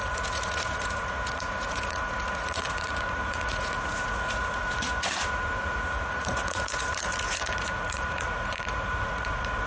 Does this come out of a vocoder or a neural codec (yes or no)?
yes